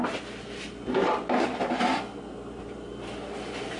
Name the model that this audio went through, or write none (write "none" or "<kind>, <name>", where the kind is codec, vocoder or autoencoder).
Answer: none